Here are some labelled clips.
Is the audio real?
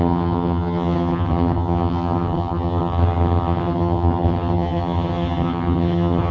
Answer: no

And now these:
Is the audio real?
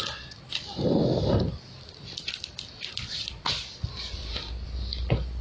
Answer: yes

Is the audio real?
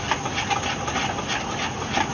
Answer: yes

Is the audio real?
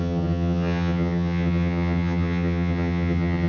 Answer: no